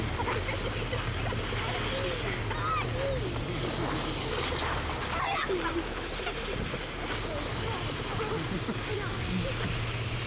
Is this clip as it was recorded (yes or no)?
yes